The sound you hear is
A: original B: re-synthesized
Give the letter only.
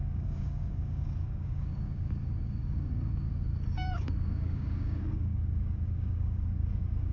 B